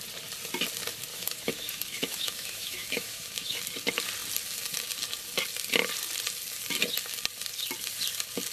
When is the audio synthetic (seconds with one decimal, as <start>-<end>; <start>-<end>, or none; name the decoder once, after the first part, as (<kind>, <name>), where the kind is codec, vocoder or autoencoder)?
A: 1.1-3.6 (autoencoder, DAC-VAE)